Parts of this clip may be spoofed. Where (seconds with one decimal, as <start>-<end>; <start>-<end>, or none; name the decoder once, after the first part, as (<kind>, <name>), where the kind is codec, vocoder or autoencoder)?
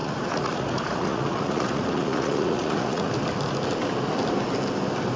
0.0-3.1 (vocoder, Vocos)